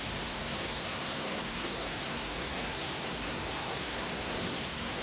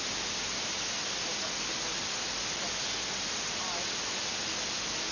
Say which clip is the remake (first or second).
first